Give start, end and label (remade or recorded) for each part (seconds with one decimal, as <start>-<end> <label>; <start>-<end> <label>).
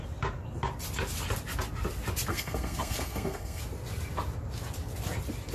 0.0-2.3 recorded; 2.3-3.6 remade; 3.6-5.5 recorded